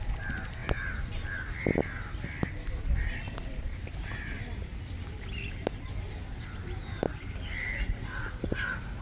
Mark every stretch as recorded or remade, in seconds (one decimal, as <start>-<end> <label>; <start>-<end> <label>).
0.0-7.6 recorded; 7.6-9.0 remade